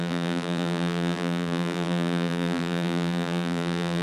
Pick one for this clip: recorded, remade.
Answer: remade